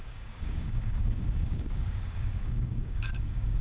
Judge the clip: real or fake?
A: fake